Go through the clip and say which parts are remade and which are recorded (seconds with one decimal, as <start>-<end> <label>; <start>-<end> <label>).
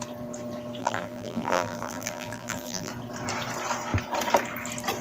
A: 0.0-0.8 recorded; 0.8-2.9 remade; 2.9-5.0 recorded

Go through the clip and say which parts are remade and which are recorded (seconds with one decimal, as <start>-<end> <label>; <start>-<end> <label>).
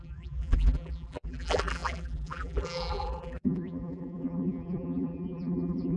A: 0.0-6.0 remade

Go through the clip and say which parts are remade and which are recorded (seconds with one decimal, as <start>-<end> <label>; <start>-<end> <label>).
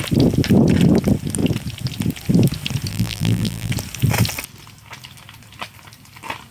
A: 0.0-2.9 recorded; 2.9-3.7 remade; 3.7-6.5 recorded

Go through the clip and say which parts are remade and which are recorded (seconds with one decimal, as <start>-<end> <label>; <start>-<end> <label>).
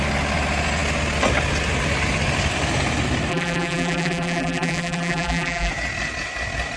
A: 0.0-3.3 recorded; 3.3-5.7 remade; 5.7-6.8 recorded